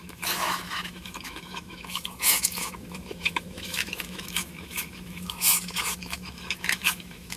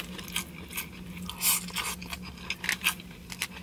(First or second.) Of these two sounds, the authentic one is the second